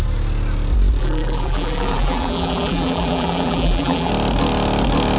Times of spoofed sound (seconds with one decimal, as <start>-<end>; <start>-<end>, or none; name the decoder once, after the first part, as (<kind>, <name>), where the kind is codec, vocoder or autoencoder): 1.0-4.1 (vocoder, BigVGAN v2)